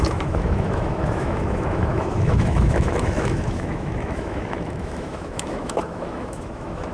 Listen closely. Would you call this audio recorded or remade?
remade